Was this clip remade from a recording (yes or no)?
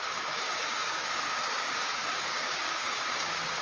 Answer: yes